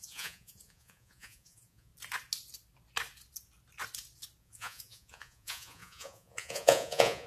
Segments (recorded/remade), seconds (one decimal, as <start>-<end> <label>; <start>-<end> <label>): 0.0-1.9 remade; 1.9-4.4 recorded; 4.4-7.3 remade